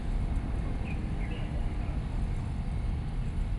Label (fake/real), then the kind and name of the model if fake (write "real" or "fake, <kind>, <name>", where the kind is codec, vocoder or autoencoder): real